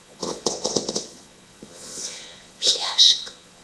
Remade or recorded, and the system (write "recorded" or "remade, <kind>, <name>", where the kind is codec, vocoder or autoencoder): remade, vocoder, Vocos